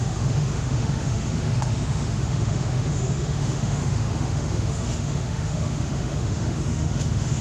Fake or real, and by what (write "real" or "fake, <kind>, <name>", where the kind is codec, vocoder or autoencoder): fake, autoencoder, DAC-VAE